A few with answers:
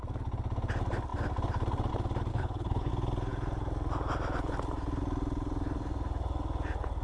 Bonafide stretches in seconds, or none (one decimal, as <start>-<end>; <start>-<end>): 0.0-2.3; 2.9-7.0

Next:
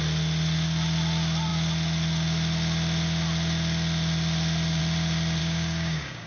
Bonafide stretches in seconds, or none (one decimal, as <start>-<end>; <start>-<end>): 0.0-5.4

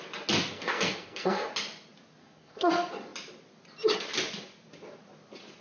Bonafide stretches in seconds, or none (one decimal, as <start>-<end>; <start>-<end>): 0.0-0.5; 1.5-2.2; 2.7-5.6

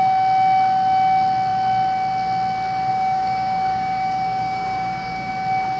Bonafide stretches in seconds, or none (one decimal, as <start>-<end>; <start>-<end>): 0.0-2.9; 5.3-5.8